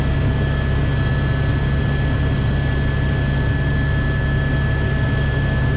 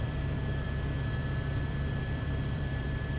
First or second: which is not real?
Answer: second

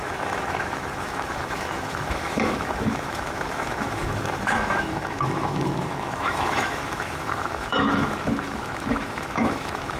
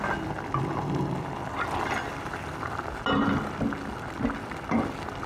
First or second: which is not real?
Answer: first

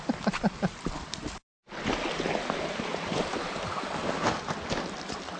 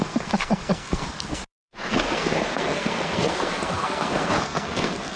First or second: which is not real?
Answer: second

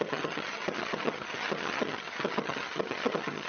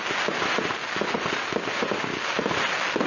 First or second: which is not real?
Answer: first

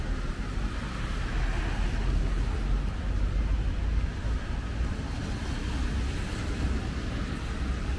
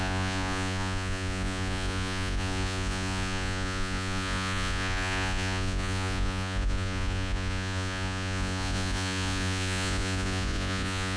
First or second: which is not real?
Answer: second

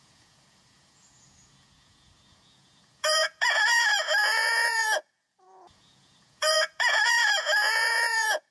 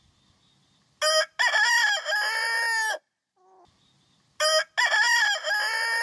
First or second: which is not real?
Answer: first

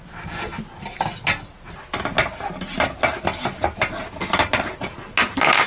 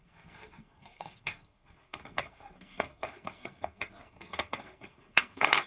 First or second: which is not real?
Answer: second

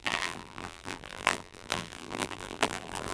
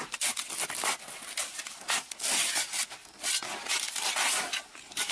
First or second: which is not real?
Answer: first